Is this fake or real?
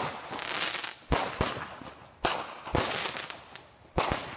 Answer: real